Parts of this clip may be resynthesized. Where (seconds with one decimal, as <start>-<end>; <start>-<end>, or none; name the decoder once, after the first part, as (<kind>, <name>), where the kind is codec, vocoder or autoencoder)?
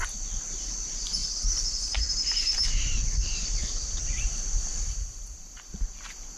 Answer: 1.2-2.1 (vocoder, BigVGAN v2); 3.6-4.4